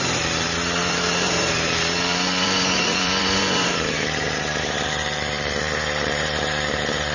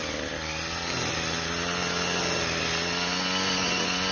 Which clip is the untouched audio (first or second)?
second